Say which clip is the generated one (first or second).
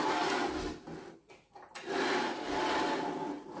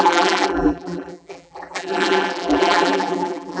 second